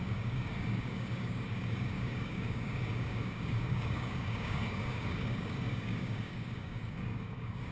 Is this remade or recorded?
remade